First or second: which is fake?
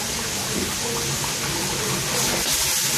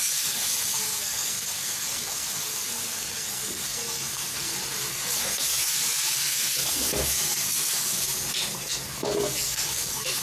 second